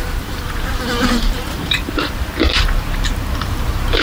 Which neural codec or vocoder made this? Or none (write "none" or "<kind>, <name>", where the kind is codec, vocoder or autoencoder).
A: vocoder, BigVGAN v2